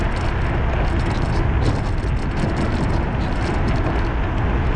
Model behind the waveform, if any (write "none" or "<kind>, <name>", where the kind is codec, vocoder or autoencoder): none